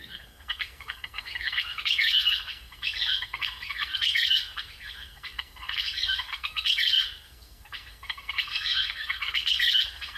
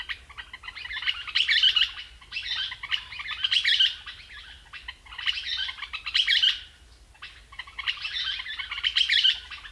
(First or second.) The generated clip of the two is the first